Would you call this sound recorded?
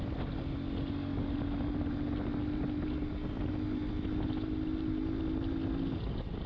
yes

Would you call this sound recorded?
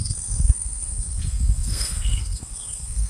no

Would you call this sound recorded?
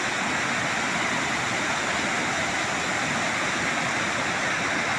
yes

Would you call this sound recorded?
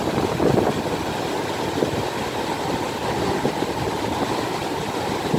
yes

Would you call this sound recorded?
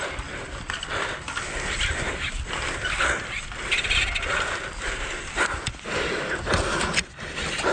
yes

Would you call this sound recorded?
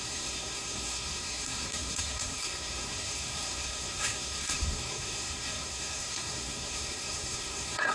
no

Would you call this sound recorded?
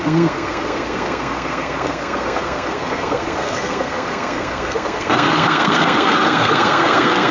no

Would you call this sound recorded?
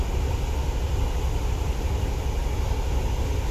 yes